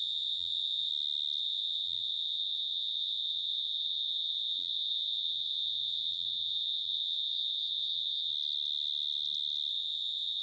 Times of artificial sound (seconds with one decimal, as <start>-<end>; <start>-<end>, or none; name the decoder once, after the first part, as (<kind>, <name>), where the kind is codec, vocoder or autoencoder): 0.0-0.9 (vocoder, Vocos); 1.4-8.3; 9.7-10.4